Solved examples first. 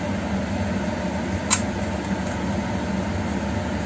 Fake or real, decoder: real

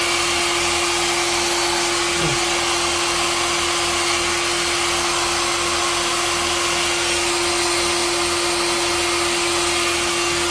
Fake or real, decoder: real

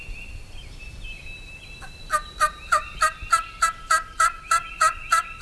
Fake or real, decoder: real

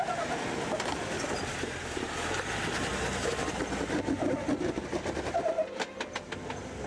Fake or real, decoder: real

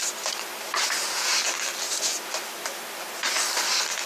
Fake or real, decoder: real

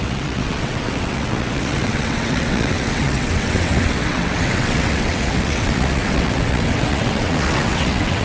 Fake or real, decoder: fake, vocoder, WaveNeXt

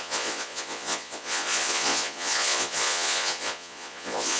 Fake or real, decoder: fake, vocoder, Vocos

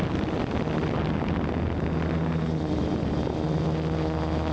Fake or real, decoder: real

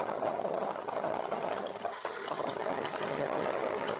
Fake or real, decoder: fake, vocoder, HiFi-GAN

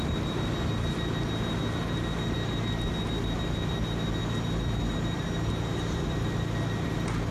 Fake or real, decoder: real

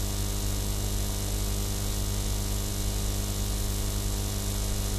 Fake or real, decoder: real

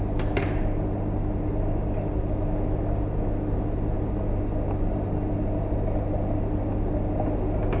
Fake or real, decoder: real